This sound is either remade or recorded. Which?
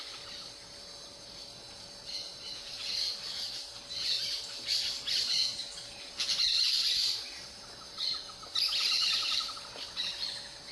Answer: recorded